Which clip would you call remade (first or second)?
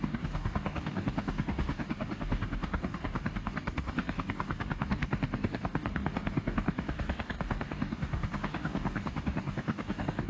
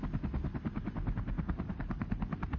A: first